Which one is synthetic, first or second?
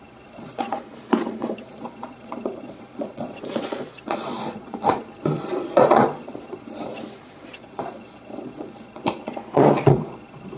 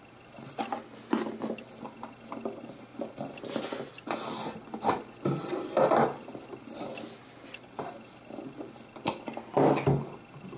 first